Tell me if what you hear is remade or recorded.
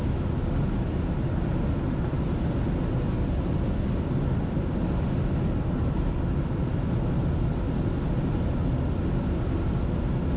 recorded